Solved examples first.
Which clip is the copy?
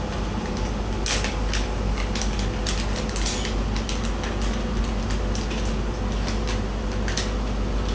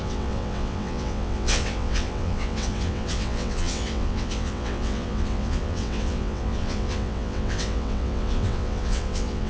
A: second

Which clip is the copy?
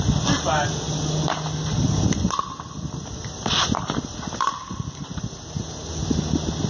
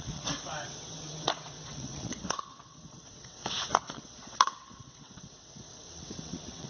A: second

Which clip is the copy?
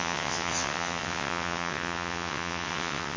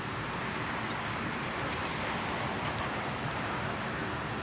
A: first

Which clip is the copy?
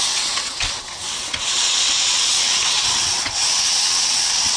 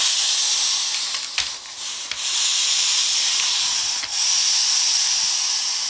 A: first